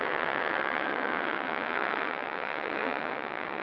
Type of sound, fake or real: fake